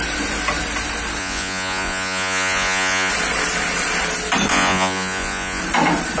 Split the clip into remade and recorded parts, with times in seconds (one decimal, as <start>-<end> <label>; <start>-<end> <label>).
0.0-1.2 recorded; 1.2-3.1 remade; 3.1-4.5 recorded; 4.5-5.6 remade; 5.6-6.2 recorded